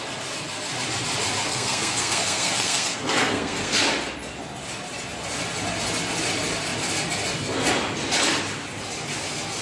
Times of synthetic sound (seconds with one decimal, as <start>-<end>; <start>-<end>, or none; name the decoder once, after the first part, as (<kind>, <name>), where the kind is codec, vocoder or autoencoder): 1.5-3.8 (codec, SNAC)